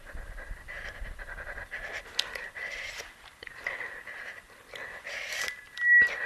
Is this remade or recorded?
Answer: recorded